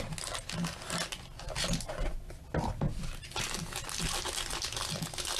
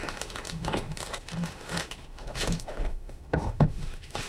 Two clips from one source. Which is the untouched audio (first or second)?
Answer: first